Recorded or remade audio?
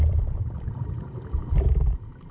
recorded